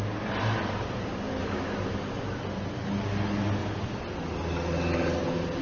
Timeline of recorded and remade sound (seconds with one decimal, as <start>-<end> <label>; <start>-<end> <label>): 0.0-1.3 recorded; 1.3-2.4 remade; 2.4-5.6 recorded